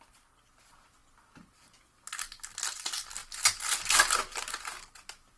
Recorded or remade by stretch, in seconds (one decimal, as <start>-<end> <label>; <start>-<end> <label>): 0.0-5.4 recorded